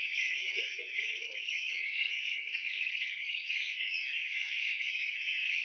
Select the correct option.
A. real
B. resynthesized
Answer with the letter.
B